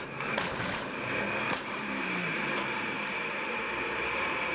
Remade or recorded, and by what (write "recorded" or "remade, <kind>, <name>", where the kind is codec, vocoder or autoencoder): remade, vocoder, BigVGAN v2